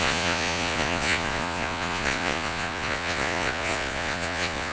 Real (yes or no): no